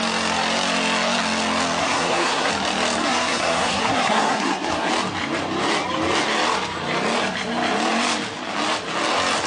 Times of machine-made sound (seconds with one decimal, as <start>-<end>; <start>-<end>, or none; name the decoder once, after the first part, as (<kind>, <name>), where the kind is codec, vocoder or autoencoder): 1.8-2.5 (codec, SNAC); 3.0-4.9